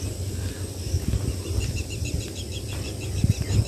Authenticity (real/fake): real